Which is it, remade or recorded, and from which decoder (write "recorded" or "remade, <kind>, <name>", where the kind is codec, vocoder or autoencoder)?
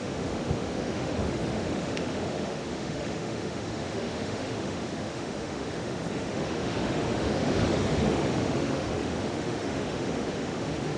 remade, autoencoder, DAC-VAE